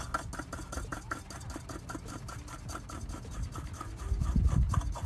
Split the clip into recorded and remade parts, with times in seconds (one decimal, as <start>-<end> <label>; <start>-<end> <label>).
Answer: 0.0-5.1 recorded